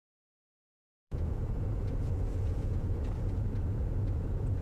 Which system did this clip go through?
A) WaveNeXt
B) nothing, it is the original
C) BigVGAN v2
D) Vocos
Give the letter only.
D